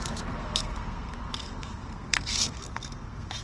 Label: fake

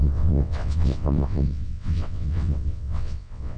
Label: fake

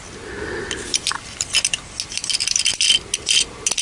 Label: real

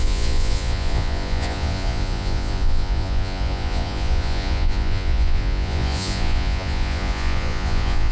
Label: fake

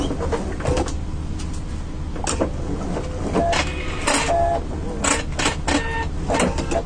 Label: real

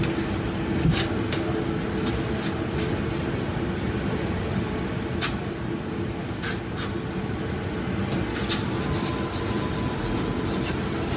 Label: real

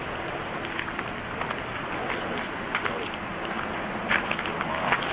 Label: real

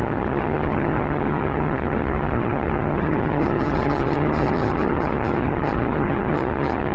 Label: fake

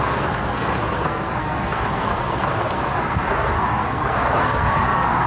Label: fake